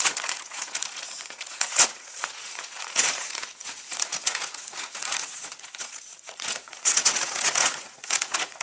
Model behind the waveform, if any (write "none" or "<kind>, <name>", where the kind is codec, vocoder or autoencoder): vocoder, Vocos